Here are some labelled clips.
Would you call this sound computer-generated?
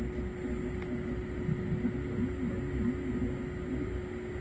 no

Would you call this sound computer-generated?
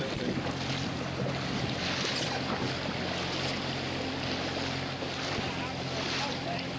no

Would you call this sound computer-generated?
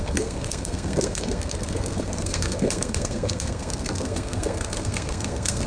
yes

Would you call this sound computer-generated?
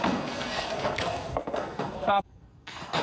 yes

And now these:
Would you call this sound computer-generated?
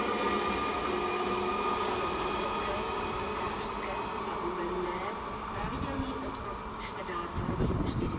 no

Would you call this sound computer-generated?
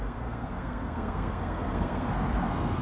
yes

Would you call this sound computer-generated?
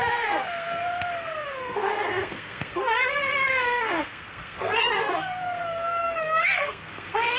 yes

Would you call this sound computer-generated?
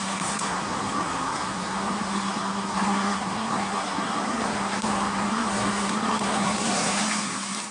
yes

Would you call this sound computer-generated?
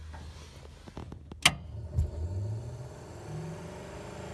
no